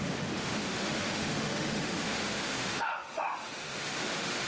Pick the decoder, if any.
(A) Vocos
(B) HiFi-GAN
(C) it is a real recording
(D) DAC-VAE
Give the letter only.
D